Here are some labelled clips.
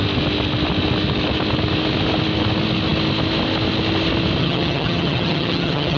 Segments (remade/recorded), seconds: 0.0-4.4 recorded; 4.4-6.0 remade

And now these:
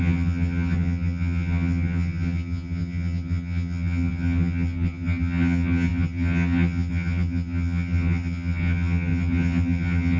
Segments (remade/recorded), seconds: 0.0-10.2 remade

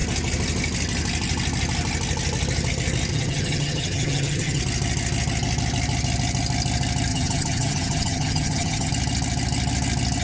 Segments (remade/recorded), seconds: 0.0-3.1 recorded; 3.1-4.6 remade; 4.6-7.1 recorded; 7.1-8.9 remade; 8.9-10.2 recorded